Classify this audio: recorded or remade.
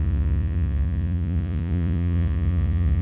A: remade